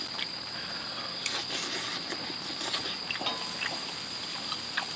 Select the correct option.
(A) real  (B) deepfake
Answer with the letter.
A